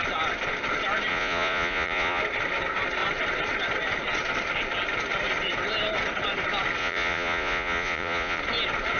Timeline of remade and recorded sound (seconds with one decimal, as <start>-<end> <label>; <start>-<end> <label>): 0.0-1.1 recorded; 1.1-2.2 remade; 2.2-6.8 recorded; 6.8-8.4 remade; 8.4-9.0 recorded